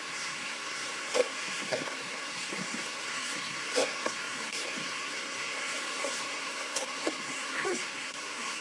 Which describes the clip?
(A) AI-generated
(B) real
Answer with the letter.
A